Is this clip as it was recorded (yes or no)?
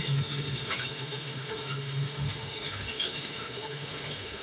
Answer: no